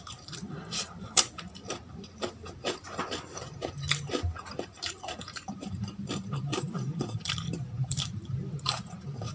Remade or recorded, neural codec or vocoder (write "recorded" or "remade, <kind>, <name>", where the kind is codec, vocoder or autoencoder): remade, vocoder, BigVGAN v2